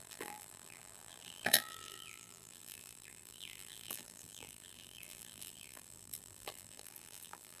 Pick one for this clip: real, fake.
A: fake